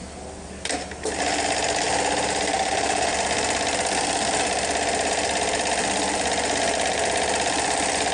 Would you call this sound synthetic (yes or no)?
no